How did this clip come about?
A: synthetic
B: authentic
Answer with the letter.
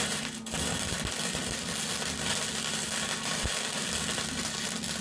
B